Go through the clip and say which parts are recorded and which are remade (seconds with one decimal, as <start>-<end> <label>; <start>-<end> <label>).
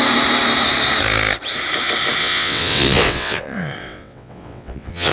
0.0-2.2 recorded; 2.2-5.1 remade